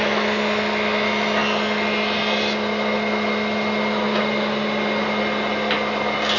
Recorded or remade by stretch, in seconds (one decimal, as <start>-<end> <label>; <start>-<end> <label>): 0.0-6.4 recorded